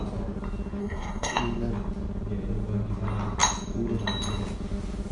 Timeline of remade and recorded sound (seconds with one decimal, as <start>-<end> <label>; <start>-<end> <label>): 0.0-0.8 recorded; 0.8-1.4 remade; 1.4-5.1 recorded